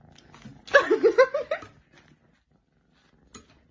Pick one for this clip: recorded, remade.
recorded